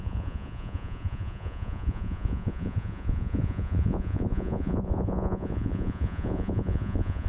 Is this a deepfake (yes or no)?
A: yes